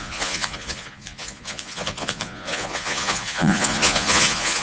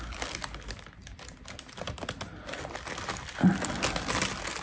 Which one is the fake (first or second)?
first